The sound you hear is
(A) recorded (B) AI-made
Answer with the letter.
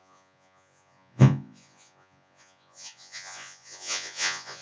B